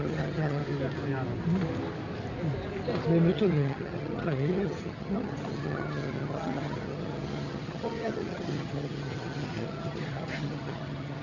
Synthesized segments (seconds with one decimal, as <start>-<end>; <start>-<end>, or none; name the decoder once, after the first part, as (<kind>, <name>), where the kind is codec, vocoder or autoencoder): 0.0-0.6 (vocoder, HiFi-GAN); 3.3-11.2